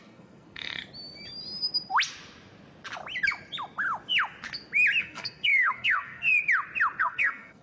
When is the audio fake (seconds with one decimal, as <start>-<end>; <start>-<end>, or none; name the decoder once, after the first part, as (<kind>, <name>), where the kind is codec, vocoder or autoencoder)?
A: 0.0-0.8 (codec, SNAC); 5.0-6.3; 7.0-7.6